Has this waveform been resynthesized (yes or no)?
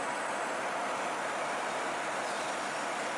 yes